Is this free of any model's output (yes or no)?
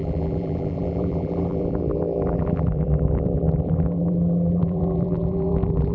no